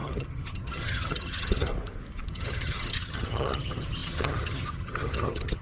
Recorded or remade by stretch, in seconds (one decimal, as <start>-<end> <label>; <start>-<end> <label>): 0.0-1.7 remade; 1.7-2.3 recorded; 2.3-5.6 remade